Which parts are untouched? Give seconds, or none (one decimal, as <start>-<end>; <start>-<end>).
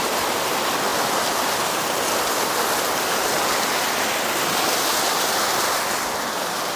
0.0-6.8